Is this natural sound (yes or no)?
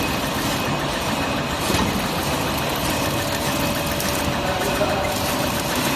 yes